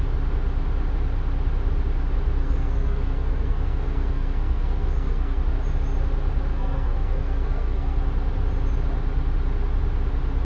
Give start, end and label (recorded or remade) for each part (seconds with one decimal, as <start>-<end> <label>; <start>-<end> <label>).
0.0-2.4 recorded; 2.4-5.4 remade; 5.4-6.5 recorded; 6.5-8.0 remade; 8.0-10.4 recorded